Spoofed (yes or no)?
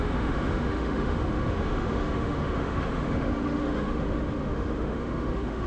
yes